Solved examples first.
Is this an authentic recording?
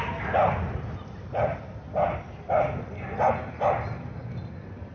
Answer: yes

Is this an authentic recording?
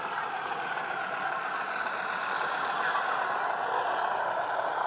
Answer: yes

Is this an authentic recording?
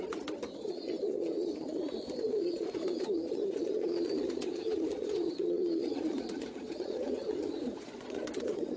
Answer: no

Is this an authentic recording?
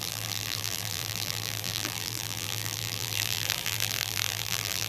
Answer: no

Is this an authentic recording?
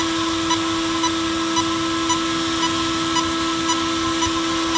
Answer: yes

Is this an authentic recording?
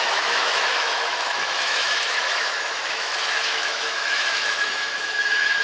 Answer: no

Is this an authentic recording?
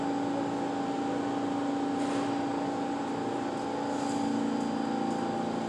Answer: yes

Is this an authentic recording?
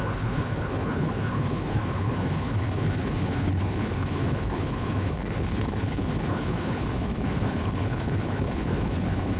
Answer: no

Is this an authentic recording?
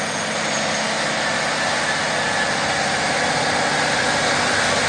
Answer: yes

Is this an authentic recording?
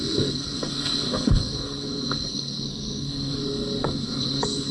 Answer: no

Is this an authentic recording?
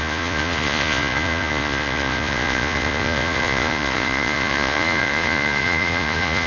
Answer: no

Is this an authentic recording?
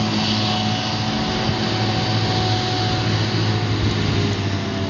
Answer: yes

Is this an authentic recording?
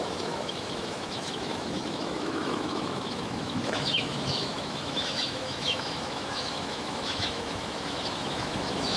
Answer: no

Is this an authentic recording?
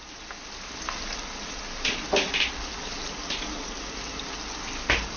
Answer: yes